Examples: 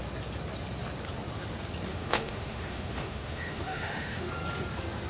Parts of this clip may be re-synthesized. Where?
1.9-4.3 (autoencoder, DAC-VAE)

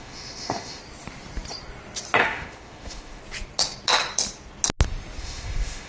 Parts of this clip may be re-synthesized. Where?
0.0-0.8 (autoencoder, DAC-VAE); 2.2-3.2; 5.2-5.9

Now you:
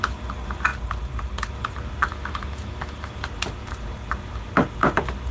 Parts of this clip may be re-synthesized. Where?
2.1-3.2 (autoencoder, DAC-VAE)